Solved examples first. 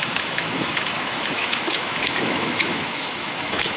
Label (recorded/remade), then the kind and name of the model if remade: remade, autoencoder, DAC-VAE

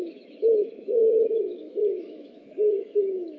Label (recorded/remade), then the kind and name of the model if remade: remade, autoencoder, DAC-VAE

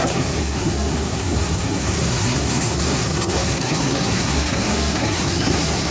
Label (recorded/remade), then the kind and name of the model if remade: remade, codec, SNAC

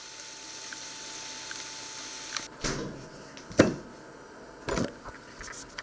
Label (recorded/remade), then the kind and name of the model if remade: recorded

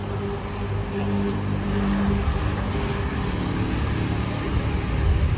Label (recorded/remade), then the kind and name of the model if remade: recorded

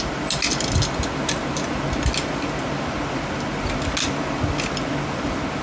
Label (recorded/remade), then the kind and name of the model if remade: recorded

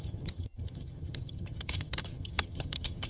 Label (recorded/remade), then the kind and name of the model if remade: remade, vocoder, HiFi-GAN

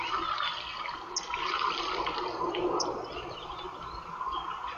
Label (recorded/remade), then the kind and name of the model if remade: recorded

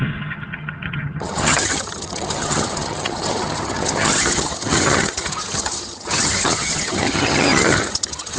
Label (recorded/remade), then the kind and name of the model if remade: remade, vocoder, HiFi-GAN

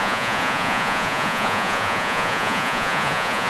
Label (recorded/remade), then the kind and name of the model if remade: remade, vocoder, Vocos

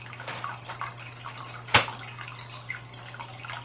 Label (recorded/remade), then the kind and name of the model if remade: recorded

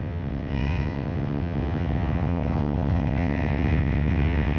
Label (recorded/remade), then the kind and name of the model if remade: remade, vocoder, WaveNeXt